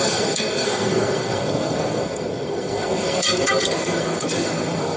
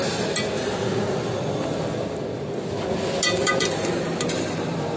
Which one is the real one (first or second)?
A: second